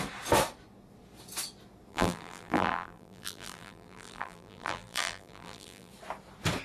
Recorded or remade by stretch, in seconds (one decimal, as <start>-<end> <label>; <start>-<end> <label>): 0.0-1.9 recorded; 1.9-5.9 remade; 5.9-6.6 recorded